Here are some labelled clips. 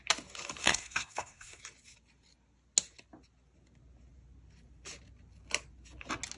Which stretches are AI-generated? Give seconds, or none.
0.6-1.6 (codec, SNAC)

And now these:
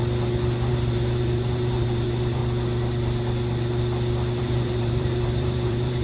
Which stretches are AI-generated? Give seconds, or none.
0.7-2.4 (vocoder, BigVGAN v2); 4.4-6.0

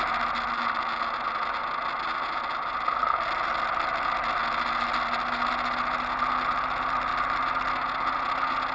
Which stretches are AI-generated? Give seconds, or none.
none

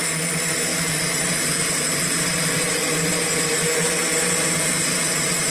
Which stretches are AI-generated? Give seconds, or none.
0.7-3.4 (vocoder, BigVGAN v2)

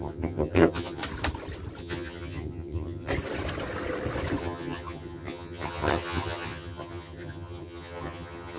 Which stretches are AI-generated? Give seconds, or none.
0.0-1.0 (vocoder, HiFi-GAN); 1.8-3.1; 4.4-8.6

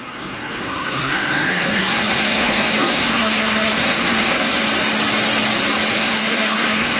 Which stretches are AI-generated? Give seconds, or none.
0.0-4.6 (codec, SNAC); 5.9-7.0

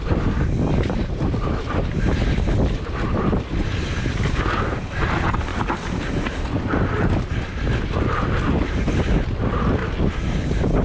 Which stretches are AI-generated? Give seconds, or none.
0.0-4.1 (vocoder, BigVGAN v2); 4.8-9.8; 10.4-10.8